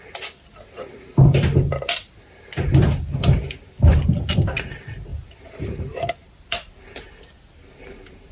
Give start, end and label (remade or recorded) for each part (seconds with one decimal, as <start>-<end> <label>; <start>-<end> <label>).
0.0-8.3 recorded

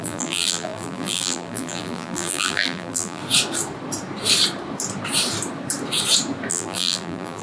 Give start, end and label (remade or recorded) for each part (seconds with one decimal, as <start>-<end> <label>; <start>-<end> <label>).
0.0-3.2 remade; 3.2-6.5 recorded; 6.5-7.4 remade

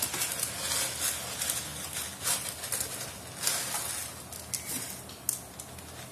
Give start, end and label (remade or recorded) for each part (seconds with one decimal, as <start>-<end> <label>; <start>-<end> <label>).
0.0-6.1 recorded

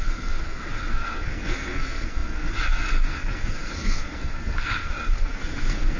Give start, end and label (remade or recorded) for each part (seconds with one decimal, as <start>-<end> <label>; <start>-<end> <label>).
0.0-6.0 remade

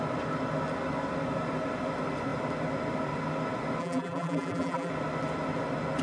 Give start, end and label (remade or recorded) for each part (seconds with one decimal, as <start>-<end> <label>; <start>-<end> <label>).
0.0-3.8 recorded; 3.8-4.9 remade; 4.9-6.0 recorded

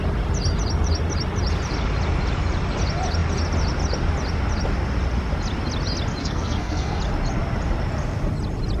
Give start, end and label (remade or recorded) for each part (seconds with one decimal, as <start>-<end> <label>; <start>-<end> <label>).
0.0-6.2 recorded; 6.2-7.0 remade; 7.0-8.8 recorded

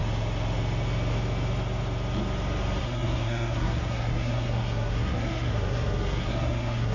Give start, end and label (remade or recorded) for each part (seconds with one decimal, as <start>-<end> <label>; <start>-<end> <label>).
0.0-2.8 recorded; 2.8-6.9 remade